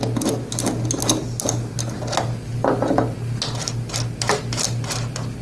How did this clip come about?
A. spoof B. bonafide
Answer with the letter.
B